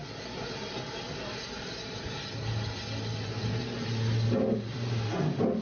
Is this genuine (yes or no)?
yes